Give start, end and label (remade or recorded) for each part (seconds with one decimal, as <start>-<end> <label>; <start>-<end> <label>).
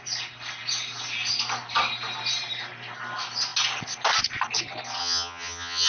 0.0-5.0 recorded; 5.0-5.9 remade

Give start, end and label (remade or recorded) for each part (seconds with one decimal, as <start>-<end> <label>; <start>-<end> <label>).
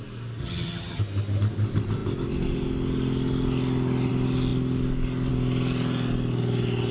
0.0-0.4 recorded; 0.4-1.0 remade; 1.0-6.9 recorded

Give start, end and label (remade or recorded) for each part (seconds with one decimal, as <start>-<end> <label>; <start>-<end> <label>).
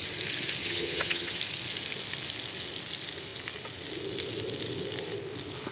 0.0-0.6 recorded; 0.6-1.4 remade; 1.4-5.7 recorded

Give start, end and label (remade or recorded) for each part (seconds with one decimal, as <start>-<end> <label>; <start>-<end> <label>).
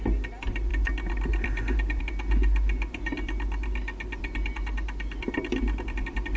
0.0-6.4 recorded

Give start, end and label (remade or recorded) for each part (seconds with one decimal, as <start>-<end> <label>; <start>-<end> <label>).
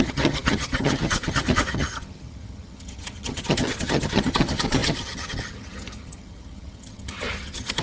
0.0-7.8 remade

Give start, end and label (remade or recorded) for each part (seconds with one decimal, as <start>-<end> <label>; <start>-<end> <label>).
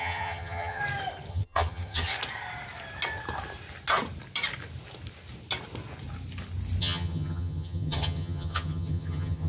0.0-0.8 remade; 0.8-1.3 recorded; 1.3-2.1 remade; 2.1-6.8 recorded; 6.8-9.5 remade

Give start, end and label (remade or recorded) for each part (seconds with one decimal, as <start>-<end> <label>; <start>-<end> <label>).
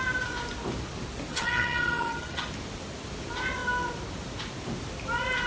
0.0-1.3 recorded; 1.3-2.5 remade; 2.5-5.5 recorded